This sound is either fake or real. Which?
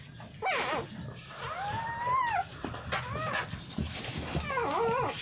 real